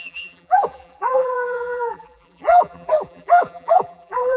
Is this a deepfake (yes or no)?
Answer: yes